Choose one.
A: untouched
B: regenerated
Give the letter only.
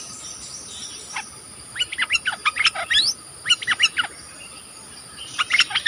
A